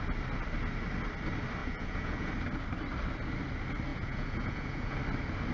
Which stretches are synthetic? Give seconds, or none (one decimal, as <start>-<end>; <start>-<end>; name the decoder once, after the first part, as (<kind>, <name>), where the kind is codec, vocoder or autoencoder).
1.6-2.3 (vocoder, Vocos); 3.9-5.0